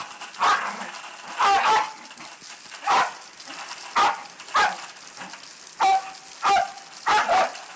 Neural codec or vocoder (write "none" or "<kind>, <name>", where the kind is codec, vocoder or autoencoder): none